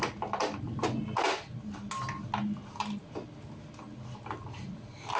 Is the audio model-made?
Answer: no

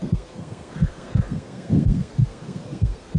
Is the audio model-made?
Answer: yes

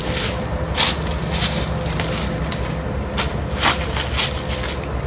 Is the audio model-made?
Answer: no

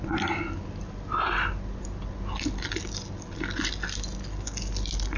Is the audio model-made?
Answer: no